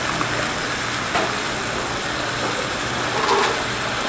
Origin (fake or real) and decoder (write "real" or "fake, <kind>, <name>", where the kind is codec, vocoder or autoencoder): real